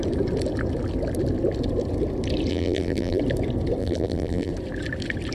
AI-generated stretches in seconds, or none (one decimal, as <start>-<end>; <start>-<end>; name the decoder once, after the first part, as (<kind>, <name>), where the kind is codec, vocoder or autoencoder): 2.5-3.2 (vocoder, BigVGAN v2); 3.8-4.5